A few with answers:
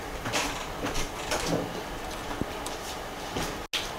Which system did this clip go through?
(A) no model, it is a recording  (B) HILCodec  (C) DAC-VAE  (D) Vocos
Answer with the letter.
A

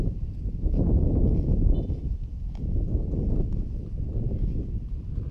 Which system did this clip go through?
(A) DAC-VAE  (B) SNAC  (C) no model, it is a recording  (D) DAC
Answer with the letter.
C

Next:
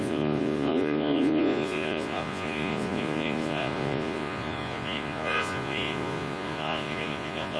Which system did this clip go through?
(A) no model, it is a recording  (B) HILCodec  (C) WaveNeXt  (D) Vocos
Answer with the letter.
D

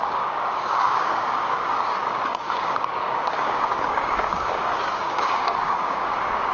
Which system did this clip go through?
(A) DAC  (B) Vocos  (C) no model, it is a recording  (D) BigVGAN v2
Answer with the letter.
A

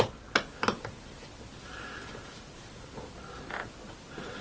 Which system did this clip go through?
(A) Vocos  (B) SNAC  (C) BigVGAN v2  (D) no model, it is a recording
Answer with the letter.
D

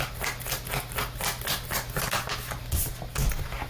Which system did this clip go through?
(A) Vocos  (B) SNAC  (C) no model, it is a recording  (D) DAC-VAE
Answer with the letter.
C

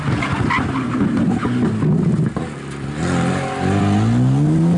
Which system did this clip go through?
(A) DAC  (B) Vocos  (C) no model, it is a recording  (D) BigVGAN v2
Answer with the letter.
C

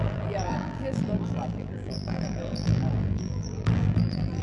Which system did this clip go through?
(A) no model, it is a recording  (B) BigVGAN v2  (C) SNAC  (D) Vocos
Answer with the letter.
B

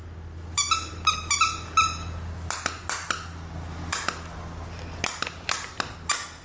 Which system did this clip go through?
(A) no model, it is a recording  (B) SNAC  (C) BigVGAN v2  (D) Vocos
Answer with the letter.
A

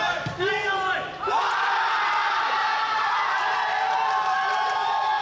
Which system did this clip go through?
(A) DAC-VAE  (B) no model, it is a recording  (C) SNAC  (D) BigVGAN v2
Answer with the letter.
D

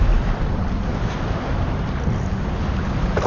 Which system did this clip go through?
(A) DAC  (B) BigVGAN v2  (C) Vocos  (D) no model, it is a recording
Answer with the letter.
D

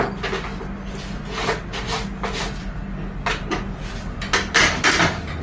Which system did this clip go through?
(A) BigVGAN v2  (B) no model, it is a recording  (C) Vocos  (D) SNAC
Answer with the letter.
B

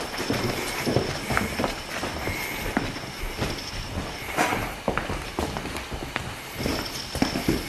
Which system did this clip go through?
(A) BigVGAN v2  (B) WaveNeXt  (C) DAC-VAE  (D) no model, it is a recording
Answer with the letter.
D